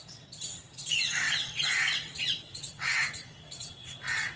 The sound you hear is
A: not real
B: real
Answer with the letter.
A